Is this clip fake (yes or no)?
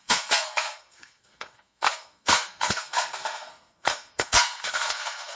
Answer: yes